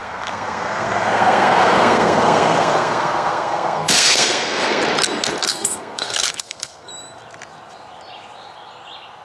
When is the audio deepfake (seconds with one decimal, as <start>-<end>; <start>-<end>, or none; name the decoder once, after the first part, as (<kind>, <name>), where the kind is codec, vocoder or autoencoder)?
0.0-4.8 (codec, SNAC); 5.4-6.9